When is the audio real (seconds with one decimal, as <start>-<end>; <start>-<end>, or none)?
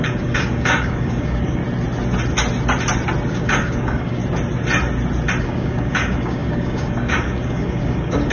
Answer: 1.6-3.3; 4.2-5.4